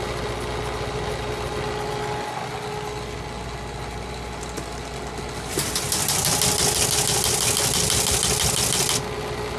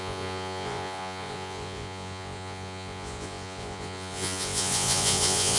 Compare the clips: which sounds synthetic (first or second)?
second